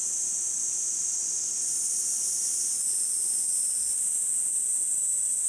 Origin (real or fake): real